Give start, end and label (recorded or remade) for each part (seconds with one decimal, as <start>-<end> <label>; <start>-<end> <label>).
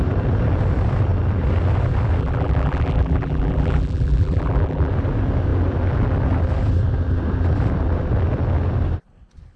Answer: 0.0-2.2 recorded; 2.2-4.9 remade; 4.9-9.6 recorded